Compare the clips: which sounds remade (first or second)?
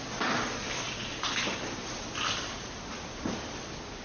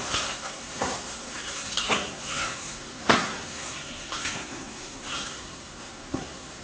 second